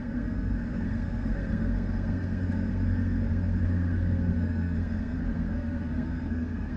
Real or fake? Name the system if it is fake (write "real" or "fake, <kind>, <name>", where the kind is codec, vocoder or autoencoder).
fake, codec, SNAC